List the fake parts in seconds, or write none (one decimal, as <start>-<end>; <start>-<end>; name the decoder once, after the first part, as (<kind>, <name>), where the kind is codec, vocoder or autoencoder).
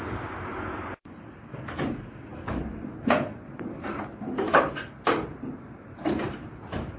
none